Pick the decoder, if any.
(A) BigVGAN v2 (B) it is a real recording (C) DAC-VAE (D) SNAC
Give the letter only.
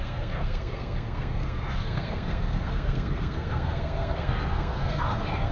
D